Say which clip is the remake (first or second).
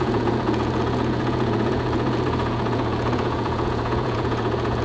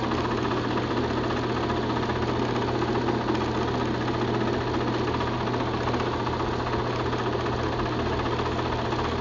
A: first